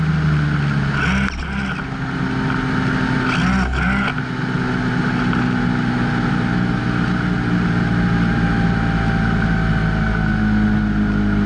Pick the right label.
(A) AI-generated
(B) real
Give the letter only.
B